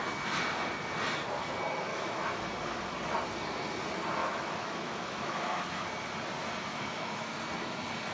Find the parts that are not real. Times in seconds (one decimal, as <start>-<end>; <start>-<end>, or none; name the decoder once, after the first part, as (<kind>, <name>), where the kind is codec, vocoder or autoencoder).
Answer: 1.9-2.4 (autoencoder, DAC-VAE); 4.2-5.9; 6.7-7.4